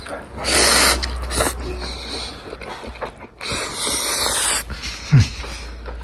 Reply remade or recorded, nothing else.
recorded